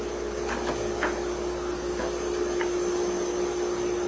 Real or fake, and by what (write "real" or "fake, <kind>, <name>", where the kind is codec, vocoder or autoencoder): real